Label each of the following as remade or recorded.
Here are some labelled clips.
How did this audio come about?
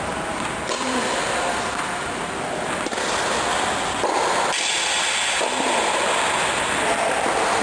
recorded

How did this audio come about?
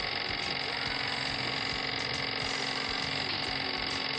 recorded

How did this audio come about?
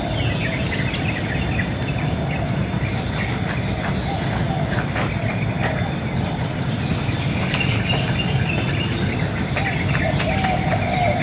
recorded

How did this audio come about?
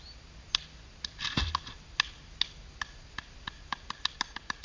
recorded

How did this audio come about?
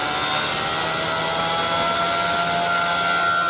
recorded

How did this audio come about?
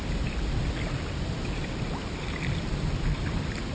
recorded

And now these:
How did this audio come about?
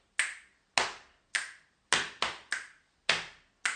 recorded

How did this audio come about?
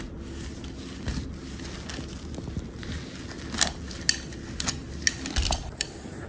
recorded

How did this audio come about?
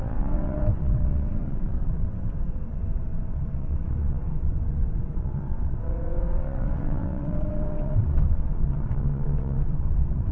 remade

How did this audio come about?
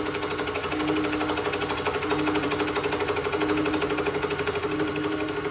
recorded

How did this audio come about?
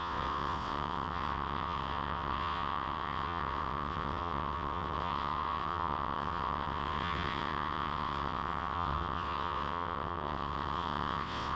remade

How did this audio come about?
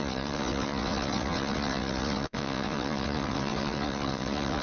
remade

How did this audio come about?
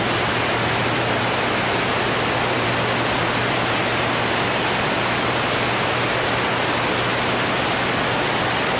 recorded